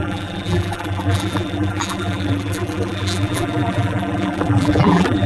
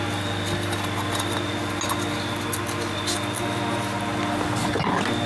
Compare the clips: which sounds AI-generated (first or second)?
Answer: first